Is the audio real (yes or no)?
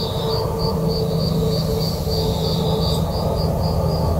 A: yes